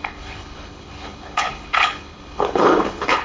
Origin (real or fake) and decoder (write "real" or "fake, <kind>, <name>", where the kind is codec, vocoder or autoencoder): fake, codec, HILCodec